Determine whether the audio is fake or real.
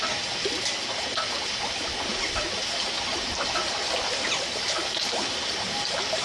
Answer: fake